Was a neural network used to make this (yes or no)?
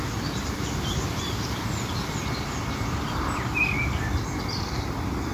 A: yes